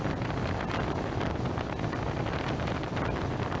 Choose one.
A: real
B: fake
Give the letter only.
A